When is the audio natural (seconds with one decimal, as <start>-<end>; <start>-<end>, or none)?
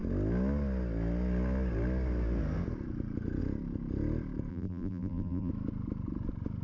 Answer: 0.0-4.5; 5.5-6.6